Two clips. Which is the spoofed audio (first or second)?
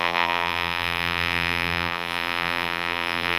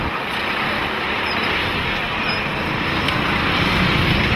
first